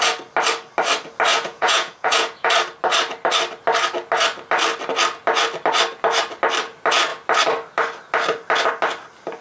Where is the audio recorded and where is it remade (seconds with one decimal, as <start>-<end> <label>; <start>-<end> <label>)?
0.0-1.3 recorded; 1.3-2.5 remade; 2.5-9.4 recorded